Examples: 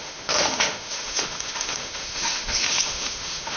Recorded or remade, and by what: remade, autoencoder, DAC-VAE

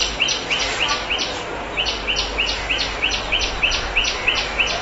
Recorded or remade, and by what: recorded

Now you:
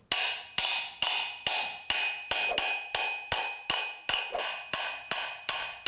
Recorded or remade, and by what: recorded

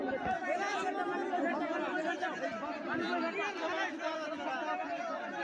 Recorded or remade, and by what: recorded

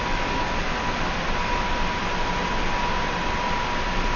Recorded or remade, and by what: recorded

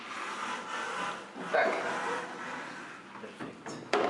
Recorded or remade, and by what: recorded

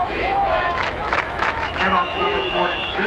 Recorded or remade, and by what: remade, autoencoder, DAC-VAE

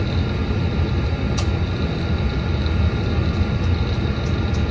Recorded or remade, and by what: recorded